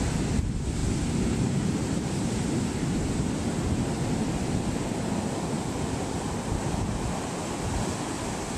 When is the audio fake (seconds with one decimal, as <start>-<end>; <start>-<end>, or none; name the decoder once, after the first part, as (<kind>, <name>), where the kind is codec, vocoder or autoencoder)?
0.8-2.6 (vocoder, BigVGAN v2)